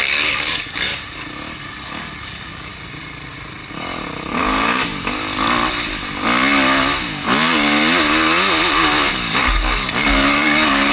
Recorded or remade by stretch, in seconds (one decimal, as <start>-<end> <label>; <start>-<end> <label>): 0.0-0.9 remade; 0.9-1.6 recorded; 1.6-2.7 remade; 2.7-4.4 recorded; 4.4-5.2 remade; 5.2-9.1 recorded; 9.1-10.9 remade